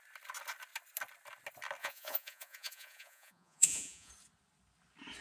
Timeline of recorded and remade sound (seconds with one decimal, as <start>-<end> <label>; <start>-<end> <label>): 0.0-1.8 recorded; 1.8-4.1 remade; 4.1-5.2 recorded